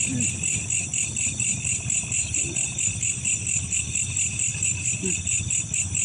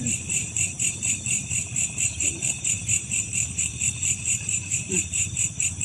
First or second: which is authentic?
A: first